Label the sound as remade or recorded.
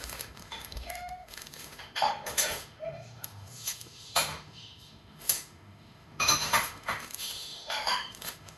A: remade